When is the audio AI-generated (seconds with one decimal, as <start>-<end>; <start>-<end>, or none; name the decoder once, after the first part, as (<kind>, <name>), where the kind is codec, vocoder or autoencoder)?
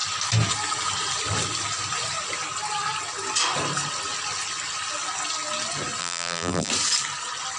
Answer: 6.0-6.7 (vocoder, BigVGAN v2)